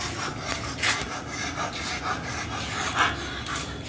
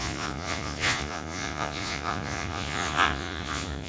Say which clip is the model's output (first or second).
second